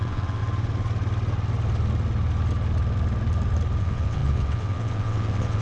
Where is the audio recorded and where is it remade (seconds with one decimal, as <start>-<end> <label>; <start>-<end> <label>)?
0.0-0.4 remade; 0.4-3.8 recorded; 3.8-5.6 remade